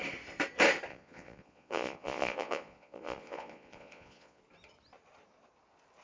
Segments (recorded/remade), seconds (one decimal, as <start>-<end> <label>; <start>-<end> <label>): 0.0-0.9 recorded; 0.9-4.4 remade; 4.4-6.0 recorded